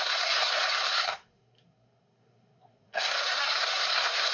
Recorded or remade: remade